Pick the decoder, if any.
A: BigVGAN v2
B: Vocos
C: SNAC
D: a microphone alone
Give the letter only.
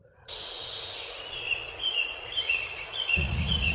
B